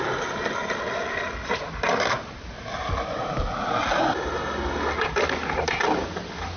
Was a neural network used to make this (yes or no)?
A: no